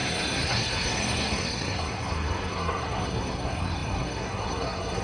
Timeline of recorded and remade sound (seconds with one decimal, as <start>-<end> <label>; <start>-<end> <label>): 0.0-5.0 remade